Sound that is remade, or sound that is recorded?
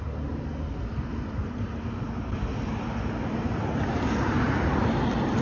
recorded